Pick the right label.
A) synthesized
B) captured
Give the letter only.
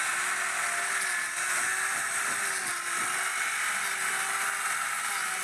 B